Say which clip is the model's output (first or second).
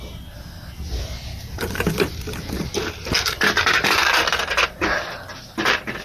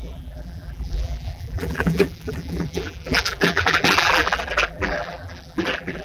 second